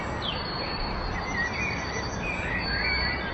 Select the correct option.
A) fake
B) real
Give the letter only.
B